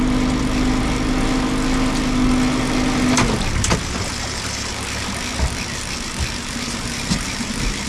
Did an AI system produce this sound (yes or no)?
no